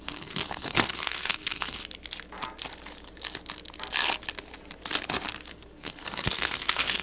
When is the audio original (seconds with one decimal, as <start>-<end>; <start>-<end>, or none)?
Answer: 1.8-5.5

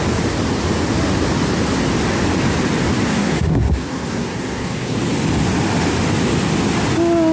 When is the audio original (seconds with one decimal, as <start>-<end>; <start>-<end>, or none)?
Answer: 0.0-3.1; 5.0-7.3